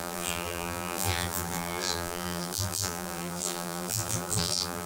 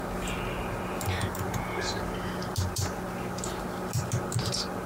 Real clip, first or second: second